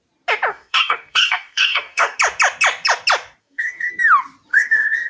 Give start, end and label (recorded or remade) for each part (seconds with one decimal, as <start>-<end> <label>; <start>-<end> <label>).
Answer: 0.0-0.5 recorded; 0.5-2.2 remade; 2.2-3.4 recorded; 3.4-3.9 remade; 3.9-4.5 recorded; 4.5-5.1 remade